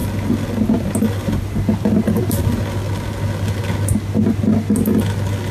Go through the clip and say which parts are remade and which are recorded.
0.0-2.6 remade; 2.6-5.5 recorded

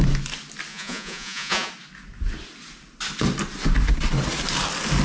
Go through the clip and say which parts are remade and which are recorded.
0.0-0.7 recorded; 0.7-1.7 remade; 1.7-5.0 recorded

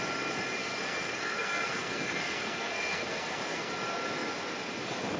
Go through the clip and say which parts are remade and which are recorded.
0.0-0.6 recorded; 0.6-3.7 remade; 3.7-5.2 recorded

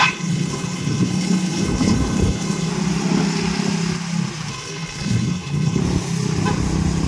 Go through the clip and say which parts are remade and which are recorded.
0.0-2.7 remade; 2.7-4.5 recorded; 4.5-5.8 remade; 5.8-7.1 recorded

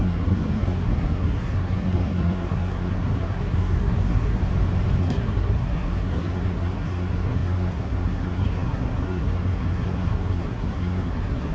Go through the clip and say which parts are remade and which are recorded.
0.0-4.4 remade; 4.4-5.0 recorded; 5.0-11.5 remade

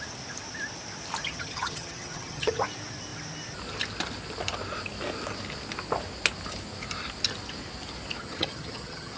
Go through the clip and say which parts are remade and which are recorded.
0.0-1.2 recorded; 1.2-2.6 remade; 2.6-8.2 recorded; 8.2-9.2 remade

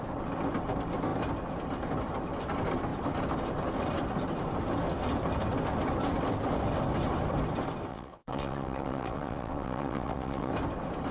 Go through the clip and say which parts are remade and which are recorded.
0.0-7.9 recorded; 7.9-10.5 remade; 10.5-11.1 recorded